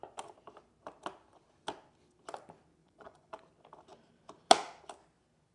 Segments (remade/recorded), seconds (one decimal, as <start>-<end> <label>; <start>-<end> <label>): 0.0-2.8 recorded; 2.8-3.4 remade; 3.4-5.5 recorded